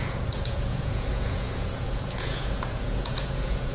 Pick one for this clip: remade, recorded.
remade